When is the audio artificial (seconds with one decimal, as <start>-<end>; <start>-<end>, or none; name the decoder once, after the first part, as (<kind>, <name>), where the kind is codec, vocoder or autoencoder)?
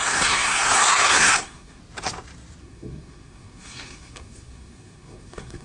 0.0-1.8 (codec, SNAC); 2.6-5.6